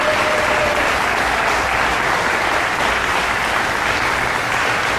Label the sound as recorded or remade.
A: recorded